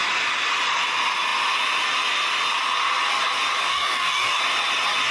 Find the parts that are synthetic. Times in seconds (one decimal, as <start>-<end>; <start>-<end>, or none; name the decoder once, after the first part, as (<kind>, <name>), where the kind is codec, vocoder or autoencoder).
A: 3.7-4.4 (codec, DAC)